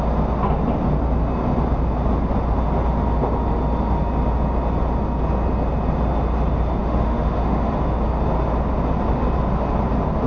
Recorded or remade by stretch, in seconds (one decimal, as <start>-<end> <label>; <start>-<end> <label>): 0.0-6.8 recorded; 6.8-7.7 remade; 7.7-10.3 recorded